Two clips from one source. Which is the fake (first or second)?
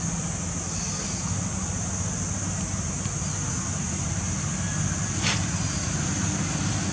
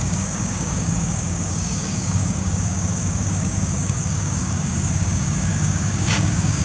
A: second